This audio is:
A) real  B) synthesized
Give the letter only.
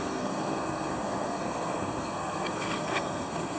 B